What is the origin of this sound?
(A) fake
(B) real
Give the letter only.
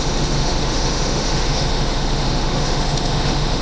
A